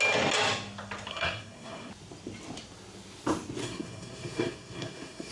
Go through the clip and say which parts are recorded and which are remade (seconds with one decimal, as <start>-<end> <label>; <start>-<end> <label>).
0.0-1.1 recorded; 1.1-1.9 remade; 1.9-3.6 recorded; 3.6-5.3 remade